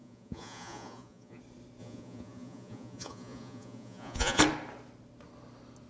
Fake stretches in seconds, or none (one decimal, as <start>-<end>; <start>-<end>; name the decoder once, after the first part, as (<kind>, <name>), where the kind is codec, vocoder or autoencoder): 0.0-1.4 (vocoder, Vocos); 1.8-4.4